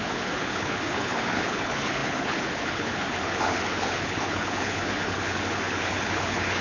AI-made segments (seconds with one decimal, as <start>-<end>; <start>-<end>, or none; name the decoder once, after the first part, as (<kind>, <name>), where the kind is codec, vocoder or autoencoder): 0.0-6.6 (codec, HILCodec)